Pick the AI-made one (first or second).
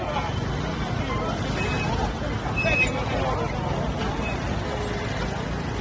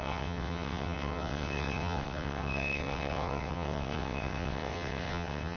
second